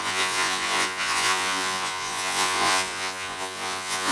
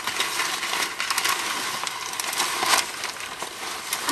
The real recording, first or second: second